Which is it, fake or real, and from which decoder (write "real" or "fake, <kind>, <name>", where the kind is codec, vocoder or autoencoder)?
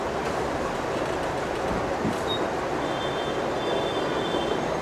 real